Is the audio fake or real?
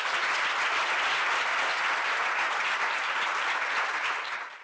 real